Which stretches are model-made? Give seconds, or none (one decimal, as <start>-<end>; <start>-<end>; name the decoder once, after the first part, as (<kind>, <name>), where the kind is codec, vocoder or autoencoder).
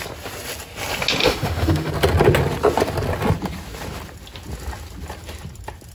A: 1.2-1.9 (autoencoder, DAC-VAE)